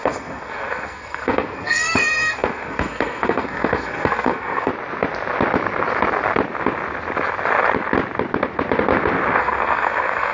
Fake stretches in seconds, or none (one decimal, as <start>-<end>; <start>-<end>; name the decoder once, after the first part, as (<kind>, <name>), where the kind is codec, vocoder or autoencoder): 0.0-4.7 (codec, SNAC); 9.4-10.3